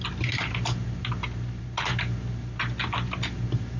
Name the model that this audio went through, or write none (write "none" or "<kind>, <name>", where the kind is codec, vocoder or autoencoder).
none